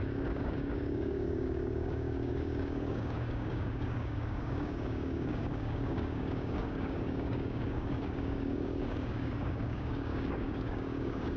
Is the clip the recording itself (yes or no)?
no